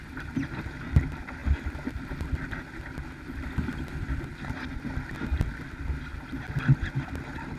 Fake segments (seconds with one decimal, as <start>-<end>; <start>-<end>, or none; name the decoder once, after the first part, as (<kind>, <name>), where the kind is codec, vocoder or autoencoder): none